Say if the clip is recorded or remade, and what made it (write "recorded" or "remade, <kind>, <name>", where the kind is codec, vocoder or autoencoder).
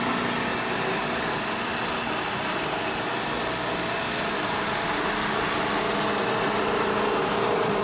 recorded